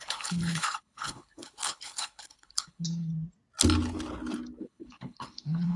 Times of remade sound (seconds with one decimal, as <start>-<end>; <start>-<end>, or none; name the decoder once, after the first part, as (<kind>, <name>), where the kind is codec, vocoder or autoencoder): 0.0-3.1 (codec, HILCodec); 4.6-5.8